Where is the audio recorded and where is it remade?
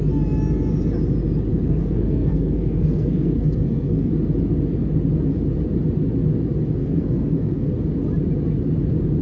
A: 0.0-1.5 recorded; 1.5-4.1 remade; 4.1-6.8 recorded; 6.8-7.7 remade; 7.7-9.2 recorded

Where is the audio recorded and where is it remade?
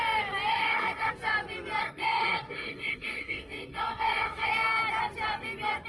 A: 0.0-0.5 recorded; 0.5-1.1 remade; 1.1-1.8 recorded; 1.8-4.5 remade; 4.5-5.9 recorded